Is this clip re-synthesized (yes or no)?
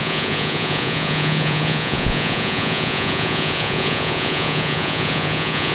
yes